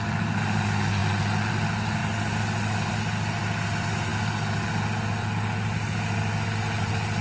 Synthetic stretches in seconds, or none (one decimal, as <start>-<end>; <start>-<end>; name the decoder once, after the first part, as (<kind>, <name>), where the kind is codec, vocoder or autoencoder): none